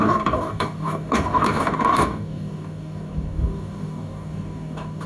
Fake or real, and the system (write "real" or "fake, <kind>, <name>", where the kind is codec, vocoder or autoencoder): fake, codec, DAC